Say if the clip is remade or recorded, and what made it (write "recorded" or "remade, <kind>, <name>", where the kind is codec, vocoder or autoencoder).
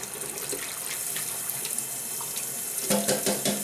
recorded